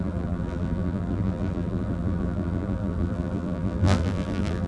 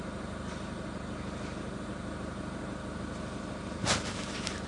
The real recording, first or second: second